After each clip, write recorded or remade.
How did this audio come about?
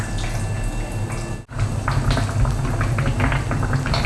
recorded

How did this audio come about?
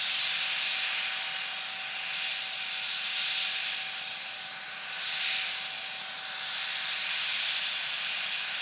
recorded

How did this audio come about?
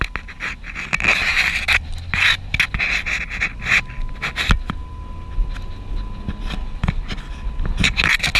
recorded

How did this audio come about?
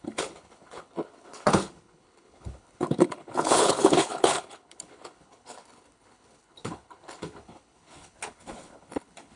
remade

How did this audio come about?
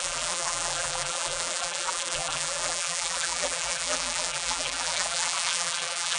remade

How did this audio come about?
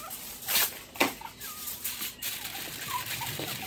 recorded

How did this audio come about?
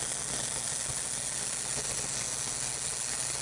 recorded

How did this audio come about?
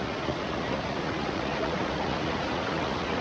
remade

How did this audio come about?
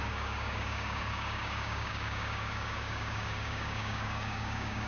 remade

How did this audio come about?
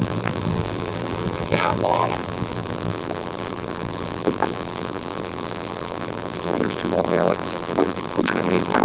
remade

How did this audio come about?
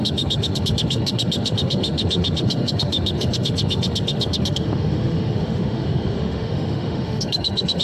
remade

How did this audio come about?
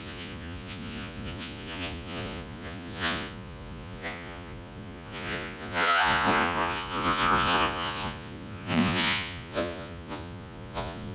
remade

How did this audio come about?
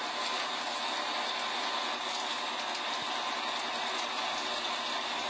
recorded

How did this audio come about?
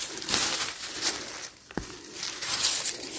remade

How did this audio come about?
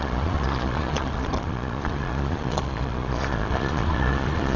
remade